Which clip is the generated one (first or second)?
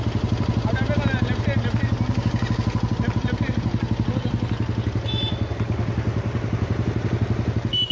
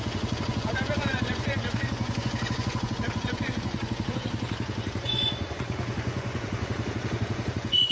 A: second